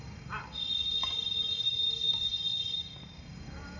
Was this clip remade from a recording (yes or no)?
yes